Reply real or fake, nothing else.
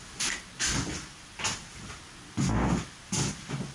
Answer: real